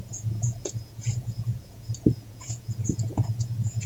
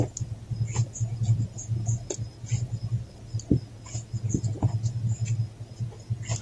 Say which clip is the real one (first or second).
second